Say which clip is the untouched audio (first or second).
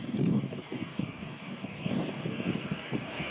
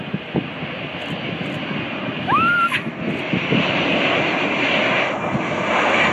second